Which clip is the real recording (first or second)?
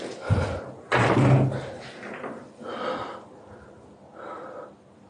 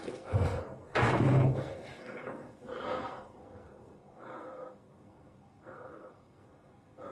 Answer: first